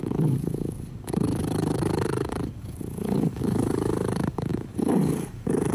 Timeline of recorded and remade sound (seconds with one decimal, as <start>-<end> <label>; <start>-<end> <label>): 0.0-5.7 remade